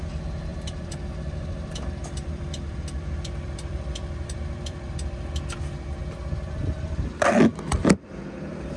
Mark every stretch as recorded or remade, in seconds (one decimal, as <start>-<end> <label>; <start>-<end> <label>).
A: 0.0-0.5 recorded; 0.5-4.9 remade; 4.9-7.5 recorded; 7.5-8.8 remade

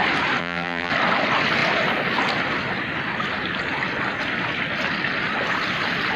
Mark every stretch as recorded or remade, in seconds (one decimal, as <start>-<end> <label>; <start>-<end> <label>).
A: 0.0-0.4 recorded; 0.4-0.9 remade; 0.9-6.2 recorded

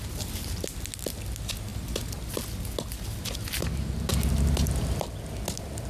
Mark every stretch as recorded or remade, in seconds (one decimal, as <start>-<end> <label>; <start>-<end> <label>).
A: 0.0-5.9 recorded

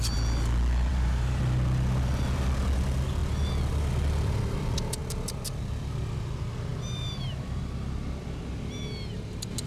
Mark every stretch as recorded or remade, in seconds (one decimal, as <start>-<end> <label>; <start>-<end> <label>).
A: 0.0-0.9 recorded; 0.9-1.4 remade; 1.4-9.7 recorded

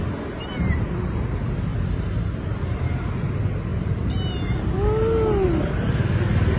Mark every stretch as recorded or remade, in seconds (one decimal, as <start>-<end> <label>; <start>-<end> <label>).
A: 0.0-3.7 recorded; 3.7-4.7 remade; 4.7-6.6 recorded

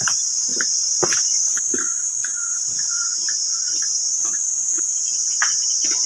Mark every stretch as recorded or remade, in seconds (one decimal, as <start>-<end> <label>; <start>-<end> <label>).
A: 0.0-0.5 recorded; 0.5-3.5 remade; 3.5-6.1 recorded